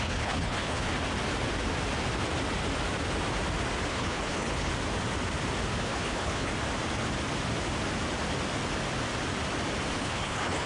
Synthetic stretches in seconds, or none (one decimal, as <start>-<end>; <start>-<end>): 0.0-0.9; 3.9-4.7; 5.8-6.5; 10.0-10.7